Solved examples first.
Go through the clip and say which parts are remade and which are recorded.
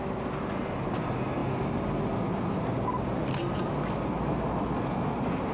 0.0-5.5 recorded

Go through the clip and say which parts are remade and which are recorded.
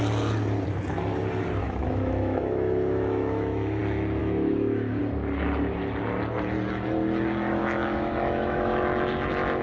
0.0-1.6 recorded; 1.6-3.8 remade; 3.8-4.2 recorded; 4.2-5.0 remade; 5.0-7.6 recorded; 7.6-9.0 remade; 9.0-9.6 recorded